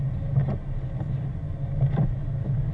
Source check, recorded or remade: recorded